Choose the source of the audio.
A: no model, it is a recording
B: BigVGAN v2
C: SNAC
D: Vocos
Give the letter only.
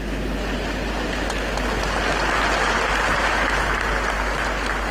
A